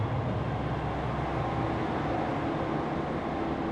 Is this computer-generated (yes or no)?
no